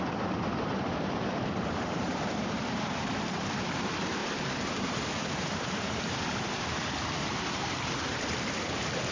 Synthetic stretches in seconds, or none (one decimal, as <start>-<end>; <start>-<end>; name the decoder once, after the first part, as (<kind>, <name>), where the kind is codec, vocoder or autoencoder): 0.0-9.1 (vocoder, BigVGAN v2)